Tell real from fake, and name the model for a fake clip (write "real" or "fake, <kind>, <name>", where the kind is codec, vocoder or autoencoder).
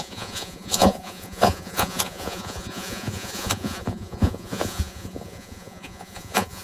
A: fake, vocoder, Vocos